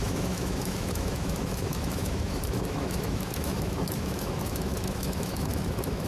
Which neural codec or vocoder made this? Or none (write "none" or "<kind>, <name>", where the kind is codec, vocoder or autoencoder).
autoencoder, DAC-VAE